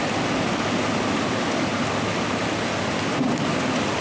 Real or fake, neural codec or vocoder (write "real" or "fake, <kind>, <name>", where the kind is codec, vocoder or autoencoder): real